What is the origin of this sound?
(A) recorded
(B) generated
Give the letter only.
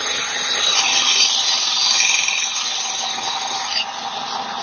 A